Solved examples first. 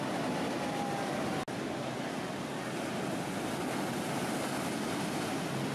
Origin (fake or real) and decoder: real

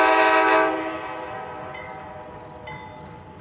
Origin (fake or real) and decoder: real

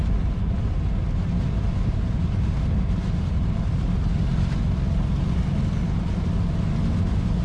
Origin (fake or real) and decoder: real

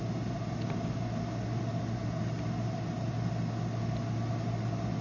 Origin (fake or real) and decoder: real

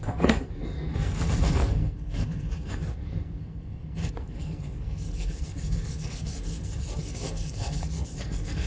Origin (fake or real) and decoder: fake, codec, SNAC